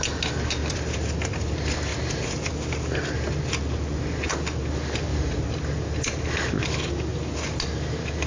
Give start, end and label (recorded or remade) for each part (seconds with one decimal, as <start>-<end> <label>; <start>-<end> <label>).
0.0-0.6 recorded; 0.6-1.1 remade; 1.1-5.1 recorded; 5.1-6.0 remade; 6.0-8.3 recorded